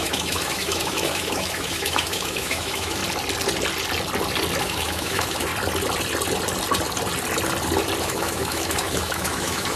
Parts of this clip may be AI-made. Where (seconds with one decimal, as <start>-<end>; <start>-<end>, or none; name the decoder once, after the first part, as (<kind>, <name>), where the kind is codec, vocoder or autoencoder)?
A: 0.0-3.0 (autoencoder, DAC-VAE); 4.6-5.5; 8.0-9.8